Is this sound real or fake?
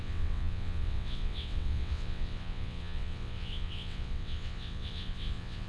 fake